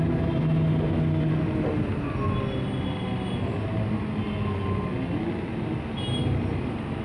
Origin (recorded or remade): recorded